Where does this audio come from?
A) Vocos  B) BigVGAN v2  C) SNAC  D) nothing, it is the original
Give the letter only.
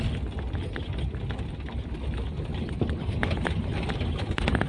D